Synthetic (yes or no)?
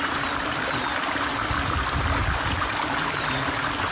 no